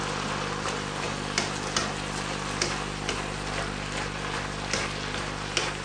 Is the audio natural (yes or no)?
yes